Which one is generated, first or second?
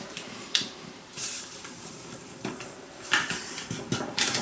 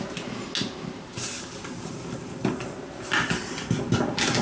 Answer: first